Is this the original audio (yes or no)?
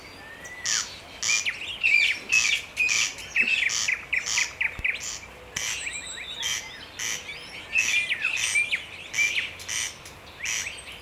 yes